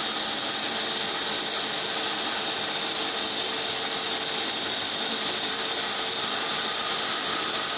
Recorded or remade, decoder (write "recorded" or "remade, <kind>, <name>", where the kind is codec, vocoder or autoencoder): remade, vocoder, BigVGAN v2